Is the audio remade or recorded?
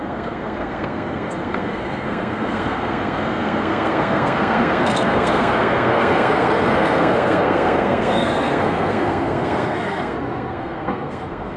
remade